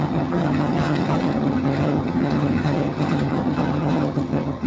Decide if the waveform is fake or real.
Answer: fake